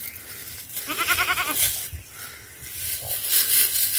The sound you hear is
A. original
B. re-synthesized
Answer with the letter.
A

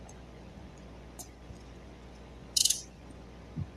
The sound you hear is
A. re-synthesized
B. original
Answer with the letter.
A